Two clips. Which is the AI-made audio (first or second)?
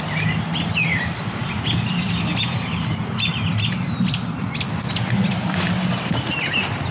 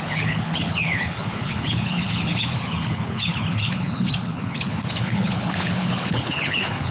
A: second